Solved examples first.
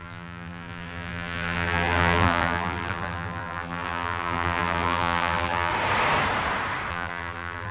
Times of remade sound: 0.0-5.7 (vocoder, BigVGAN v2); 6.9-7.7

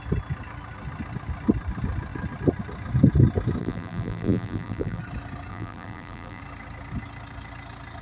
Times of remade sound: 3.6-5.0 (vocoder, BigVGAN v2); 5.5-6.4

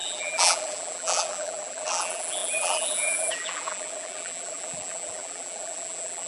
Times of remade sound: 0.0-6.3 (vocoder, BigVGAN v2)

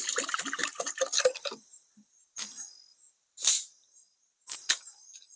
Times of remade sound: 1.7-2.4 (vocoder, BigVGAN v2); 2.9-5.0

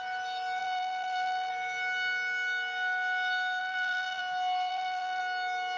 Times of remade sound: 0.6-1.5 (vocoder, BigVGAN v2); 3.6-4.2; 4.7-5.2

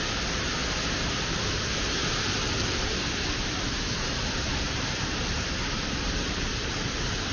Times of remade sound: 0.0-0.6 (vocoder, BigVGAN v2); 1.5-7.3